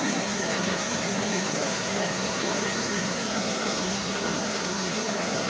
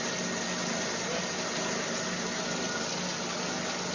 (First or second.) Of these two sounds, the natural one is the second